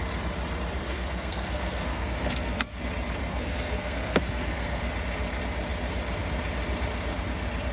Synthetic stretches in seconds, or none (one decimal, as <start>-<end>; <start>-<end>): 0.8-2.8; 3.2-4.8